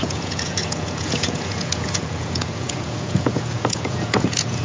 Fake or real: fake